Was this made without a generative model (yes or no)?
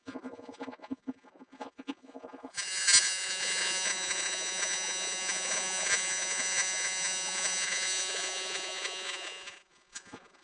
no